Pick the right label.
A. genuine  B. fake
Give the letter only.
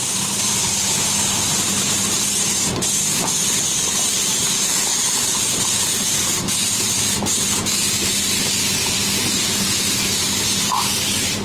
B